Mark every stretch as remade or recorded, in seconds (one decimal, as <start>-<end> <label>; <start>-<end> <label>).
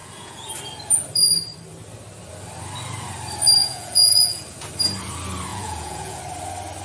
0.0-0.5 remade; 0.5-3.6 recorded; 3.6-4.6 remade; 4.6-5.5 recorded; 5.5-6.2 remade; 6.2-6.8 recorded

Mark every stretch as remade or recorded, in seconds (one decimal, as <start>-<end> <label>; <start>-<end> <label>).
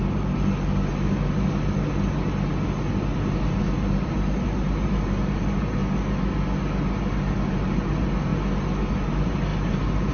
0.0-0.9 remade; 0.9-3.6 recorded; 3.6-5.8 remade; 5.8-7.5 recorded; 7.5-8.3 remade; 8.3-8.9 recorded; 8.9-10.1 remade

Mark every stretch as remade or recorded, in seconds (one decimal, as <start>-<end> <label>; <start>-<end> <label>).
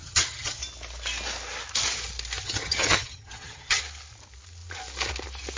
0.0-0.6 remade; 0.6-2.4 recorded; 2.4-3.8 remade; 3.8-5.6 recorded